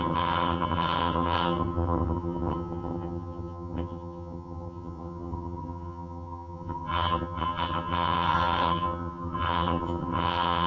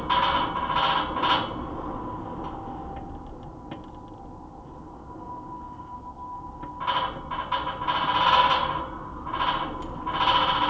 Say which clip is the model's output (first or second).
first